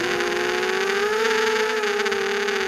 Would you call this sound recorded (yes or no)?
yes